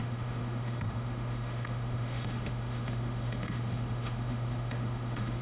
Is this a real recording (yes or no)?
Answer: no